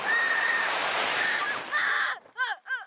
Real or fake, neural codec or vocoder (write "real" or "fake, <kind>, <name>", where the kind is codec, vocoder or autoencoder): real